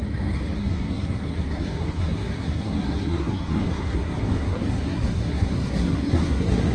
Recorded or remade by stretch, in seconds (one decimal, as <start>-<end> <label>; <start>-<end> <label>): 0.0-0.6 recorded; 0.6-6.7 remade

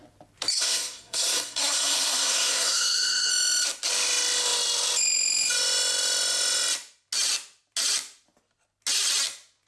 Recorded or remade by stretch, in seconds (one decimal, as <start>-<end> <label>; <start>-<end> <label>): 0.0-0.5 recorded; 0.5-3.3 remade; 3.3-9.7 recorded